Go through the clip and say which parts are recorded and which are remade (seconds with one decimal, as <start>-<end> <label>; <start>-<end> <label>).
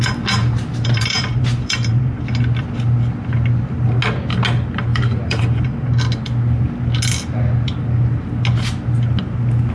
0.0-0.4 recorded; 0.4-2.2 remade; 2.2-4.9 recorded; 4.9-5.9 remade; 5.9-9.7 recorded